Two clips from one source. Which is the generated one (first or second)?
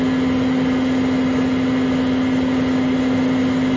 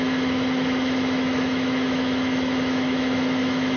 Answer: second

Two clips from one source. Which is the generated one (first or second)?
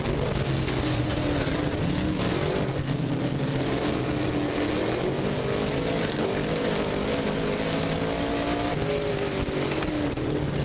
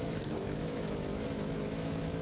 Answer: second